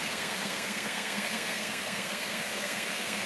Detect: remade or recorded remade